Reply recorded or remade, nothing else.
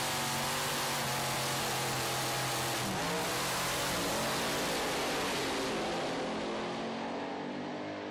recorded